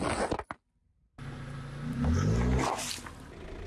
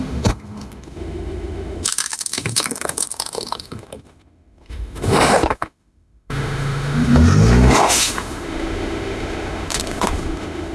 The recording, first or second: first